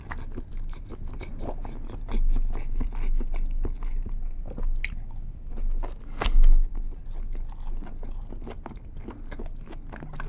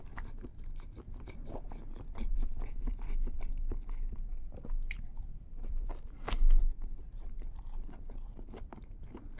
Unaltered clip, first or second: first